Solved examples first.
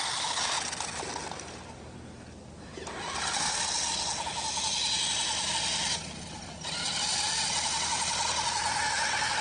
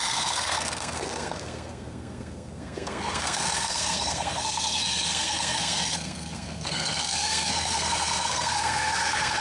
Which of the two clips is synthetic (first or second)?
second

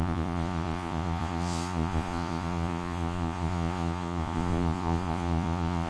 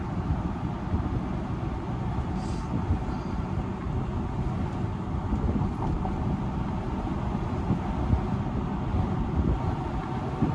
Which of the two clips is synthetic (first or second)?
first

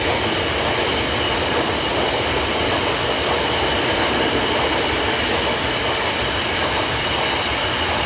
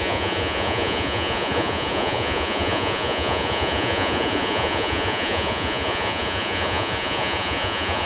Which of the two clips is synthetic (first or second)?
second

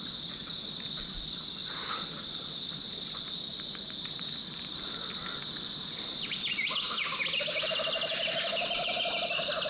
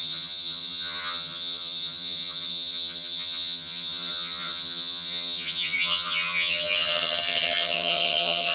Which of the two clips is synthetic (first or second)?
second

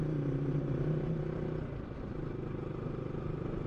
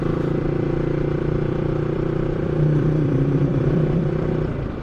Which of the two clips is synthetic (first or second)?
second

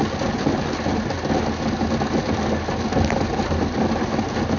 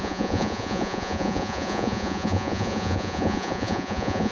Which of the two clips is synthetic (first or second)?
second